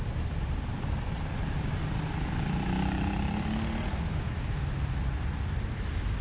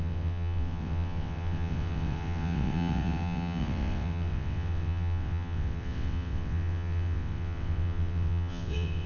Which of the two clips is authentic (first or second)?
first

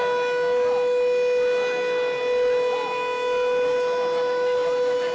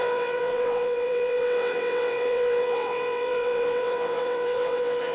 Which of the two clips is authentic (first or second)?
first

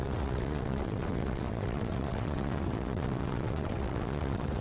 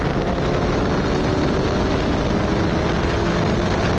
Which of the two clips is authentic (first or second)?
second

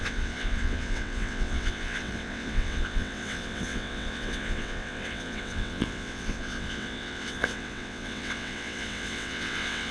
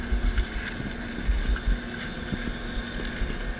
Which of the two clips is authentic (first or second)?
second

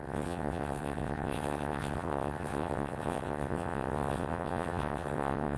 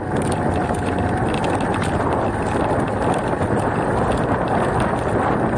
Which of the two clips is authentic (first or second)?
second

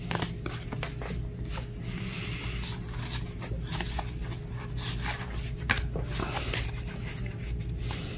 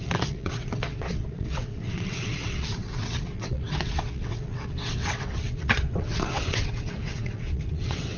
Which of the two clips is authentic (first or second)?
first